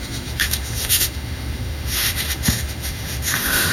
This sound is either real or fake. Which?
fake